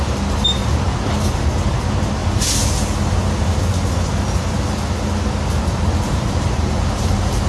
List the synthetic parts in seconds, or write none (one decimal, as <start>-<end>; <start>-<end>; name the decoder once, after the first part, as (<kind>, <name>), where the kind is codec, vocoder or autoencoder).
0.0-2.2 (vocoder, BigVGAN v2); 5.6-7.5